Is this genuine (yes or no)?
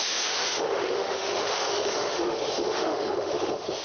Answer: no